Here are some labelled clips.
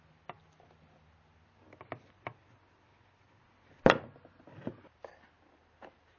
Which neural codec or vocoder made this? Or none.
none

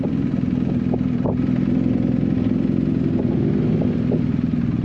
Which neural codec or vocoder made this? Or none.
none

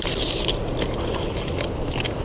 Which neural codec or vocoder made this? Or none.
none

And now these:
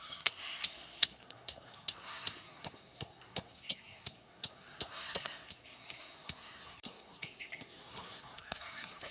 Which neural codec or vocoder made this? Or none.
codec, SNAC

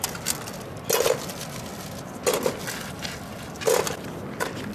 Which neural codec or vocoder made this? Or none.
none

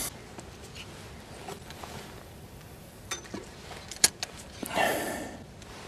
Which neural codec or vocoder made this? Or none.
none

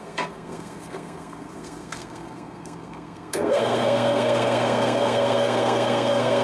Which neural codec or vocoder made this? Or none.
codec, SNAC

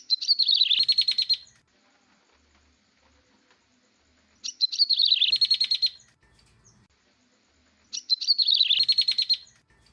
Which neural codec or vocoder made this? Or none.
none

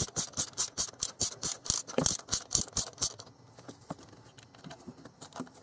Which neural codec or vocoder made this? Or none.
none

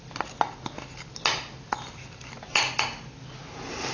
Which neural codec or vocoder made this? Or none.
none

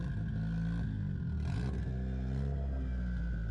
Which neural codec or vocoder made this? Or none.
none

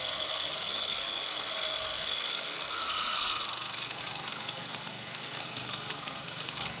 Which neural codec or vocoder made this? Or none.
codec, SNAC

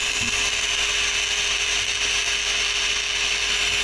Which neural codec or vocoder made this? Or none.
none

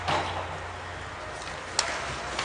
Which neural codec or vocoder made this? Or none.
none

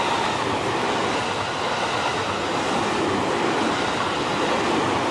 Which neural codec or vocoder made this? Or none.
none